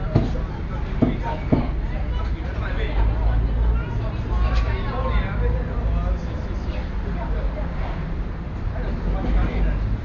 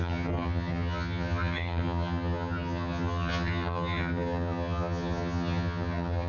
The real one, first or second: first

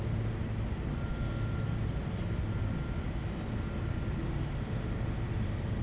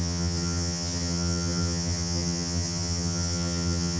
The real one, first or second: first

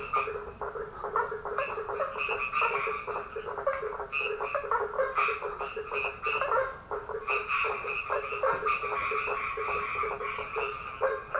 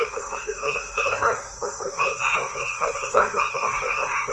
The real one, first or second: first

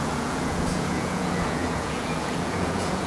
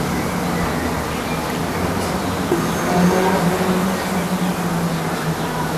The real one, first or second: second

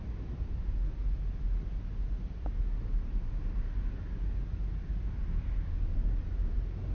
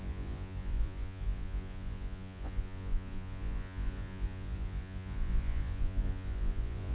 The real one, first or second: first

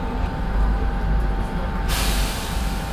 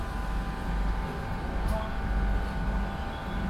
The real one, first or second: second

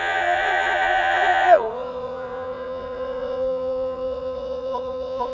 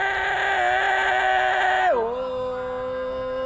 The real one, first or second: second